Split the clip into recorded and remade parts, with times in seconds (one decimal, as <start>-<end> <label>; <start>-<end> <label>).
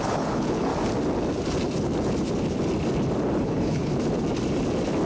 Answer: 0.0-0.7 remade; 0.7-3.4 recorded; 3.4-3.9 remade; 3.9-5.1 recorded